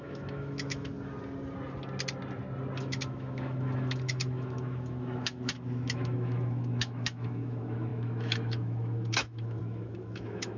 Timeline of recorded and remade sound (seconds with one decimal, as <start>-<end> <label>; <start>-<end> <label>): 0.0-0.9 remade; 0.9-2.8 recorded; 2.8-10.6 remade